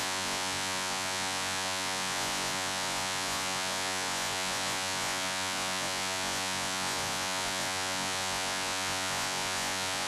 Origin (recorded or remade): remade